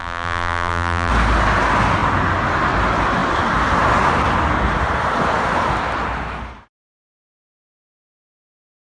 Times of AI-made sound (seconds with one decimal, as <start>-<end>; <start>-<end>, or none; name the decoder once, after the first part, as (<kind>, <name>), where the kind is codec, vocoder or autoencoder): 0.0-1.1 (vocoder, BigVGAN v2)